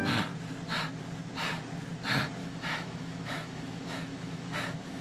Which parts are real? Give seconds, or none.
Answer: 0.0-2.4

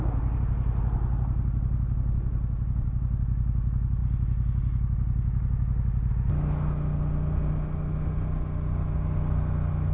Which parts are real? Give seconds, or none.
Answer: 0.0-9.9

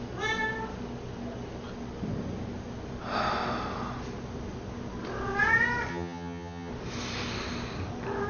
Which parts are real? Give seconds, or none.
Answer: 0.0-5.9; 6.7-8.3

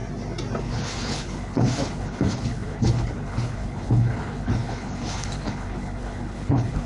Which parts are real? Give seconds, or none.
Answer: 0.0-0.6

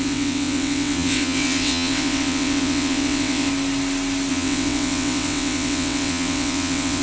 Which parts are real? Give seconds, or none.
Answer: 3.5-4.3